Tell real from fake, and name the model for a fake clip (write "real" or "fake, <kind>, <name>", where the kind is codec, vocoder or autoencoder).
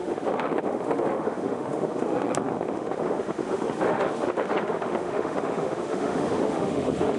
fake, autoencoder, DAC-VAE